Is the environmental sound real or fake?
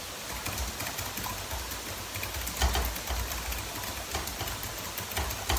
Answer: real